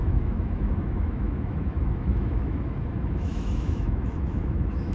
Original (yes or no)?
no